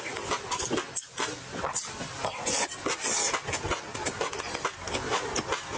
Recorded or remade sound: recorded